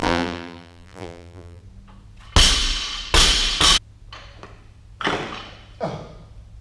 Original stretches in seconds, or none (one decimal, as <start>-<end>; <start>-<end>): 1.6-6.6

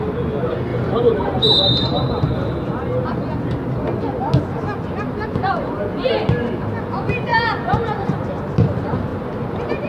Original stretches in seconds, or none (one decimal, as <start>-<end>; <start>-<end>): 0.0-0.7; 2.5-9.9

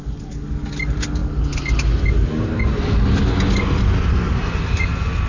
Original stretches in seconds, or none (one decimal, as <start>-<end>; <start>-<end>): 0.0-5.3

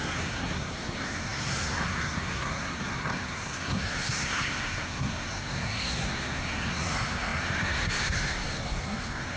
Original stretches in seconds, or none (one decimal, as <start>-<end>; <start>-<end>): none